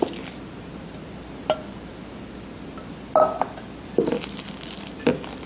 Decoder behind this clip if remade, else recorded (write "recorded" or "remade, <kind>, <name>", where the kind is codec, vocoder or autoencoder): recorded